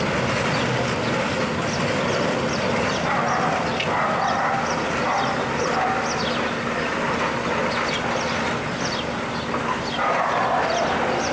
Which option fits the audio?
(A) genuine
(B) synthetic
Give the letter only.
A